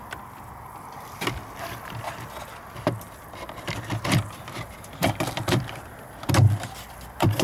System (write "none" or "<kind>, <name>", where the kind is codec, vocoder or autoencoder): none